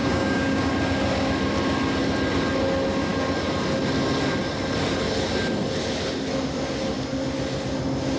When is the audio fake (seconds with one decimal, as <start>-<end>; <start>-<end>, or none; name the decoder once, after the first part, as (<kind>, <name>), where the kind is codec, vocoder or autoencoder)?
0.0-0.7 (codec, DAC)